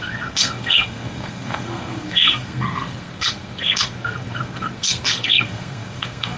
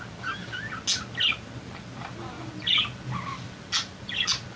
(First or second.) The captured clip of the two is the second